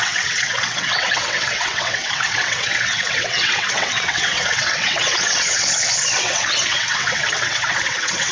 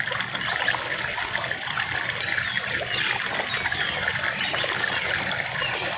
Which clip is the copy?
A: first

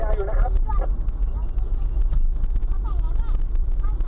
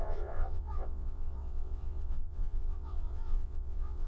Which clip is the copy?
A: second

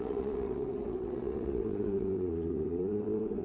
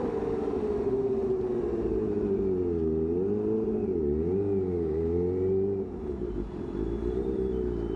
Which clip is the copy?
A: first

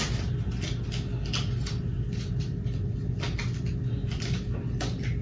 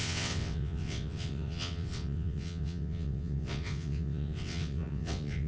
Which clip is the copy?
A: second